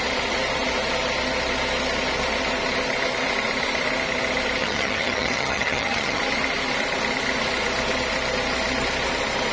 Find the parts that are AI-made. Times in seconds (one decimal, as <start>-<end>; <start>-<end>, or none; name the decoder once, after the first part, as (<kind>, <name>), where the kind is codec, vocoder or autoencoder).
4.6-6.2 (vocoder, HiFi-GAN)